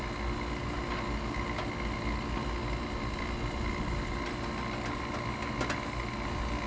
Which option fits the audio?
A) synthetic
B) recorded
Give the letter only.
B